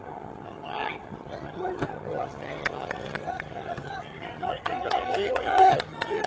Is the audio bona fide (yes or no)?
no